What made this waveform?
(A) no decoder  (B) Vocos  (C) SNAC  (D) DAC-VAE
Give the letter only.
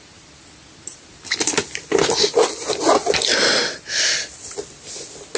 A